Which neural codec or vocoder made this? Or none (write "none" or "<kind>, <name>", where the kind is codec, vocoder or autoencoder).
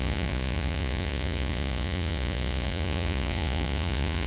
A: vocoder, Vocos